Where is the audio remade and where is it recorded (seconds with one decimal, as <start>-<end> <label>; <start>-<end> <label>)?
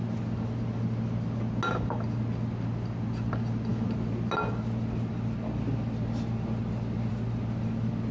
0.0-8.1 recorded